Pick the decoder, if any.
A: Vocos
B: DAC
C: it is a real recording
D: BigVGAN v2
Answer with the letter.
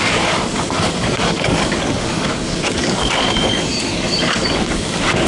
B